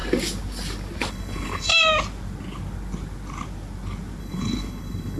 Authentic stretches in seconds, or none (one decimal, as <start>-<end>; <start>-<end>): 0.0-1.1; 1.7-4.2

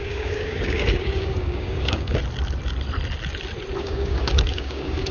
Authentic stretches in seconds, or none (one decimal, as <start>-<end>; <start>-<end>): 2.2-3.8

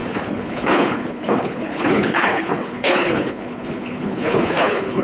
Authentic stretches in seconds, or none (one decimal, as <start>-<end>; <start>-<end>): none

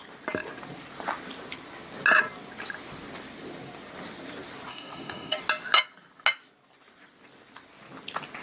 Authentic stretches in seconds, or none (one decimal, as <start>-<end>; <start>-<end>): 0.0-4.7; 5.4-8.4